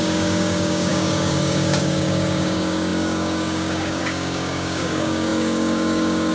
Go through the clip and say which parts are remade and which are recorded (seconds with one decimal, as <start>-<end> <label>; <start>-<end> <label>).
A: 0.0-6.3 remade